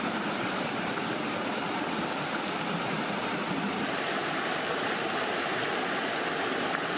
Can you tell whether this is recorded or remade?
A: recorded